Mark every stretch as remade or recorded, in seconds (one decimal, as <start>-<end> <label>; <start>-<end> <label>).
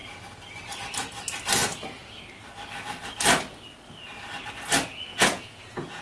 0.0-5.1 recorded; 5.1-6.0 remade